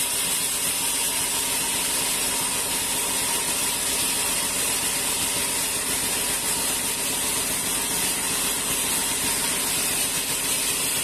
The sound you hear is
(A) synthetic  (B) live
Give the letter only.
B